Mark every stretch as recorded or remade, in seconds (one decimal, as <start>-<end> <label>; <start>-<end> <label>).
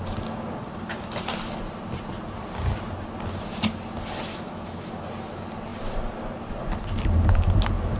0.0-4.3 recorded; 4.3-4.9 remade; 4.9-8.0 recorded